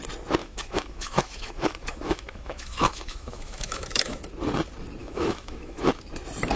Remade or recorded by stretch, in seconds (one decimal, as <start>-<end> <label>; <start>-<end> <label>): 0.0-0.4 recorded; 0.4-4.2 remade; 4.2-5.0 recorded; 5.0-5.8 remade; 5.8-6.6 recorded